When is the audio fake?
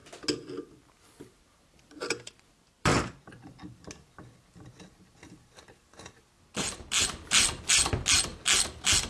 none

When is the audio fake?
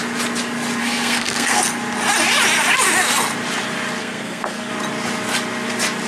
0.8-1.6 (codec, SNAC); 4.0-4.7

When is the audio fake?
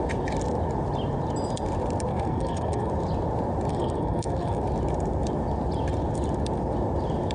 2.1-2.9 (codec, SNAC); 3.7-4.6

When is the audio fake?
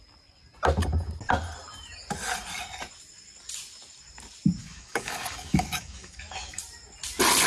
4.6-6.6 (codec, DAC)